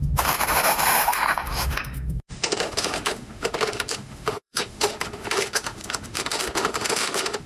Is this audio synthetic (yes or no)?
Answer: yes